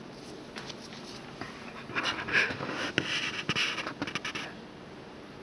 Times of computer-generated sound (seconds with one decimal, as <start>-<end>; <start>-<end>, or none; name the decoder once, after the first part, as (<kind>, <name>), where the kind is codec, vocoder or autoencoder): 2.3-2.9 (autoencoder, DAC-VAE)